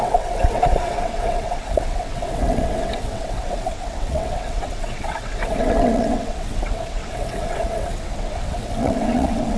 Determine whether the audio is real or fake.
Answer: fake